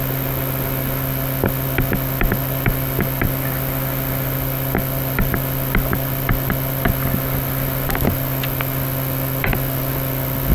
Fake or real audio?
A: real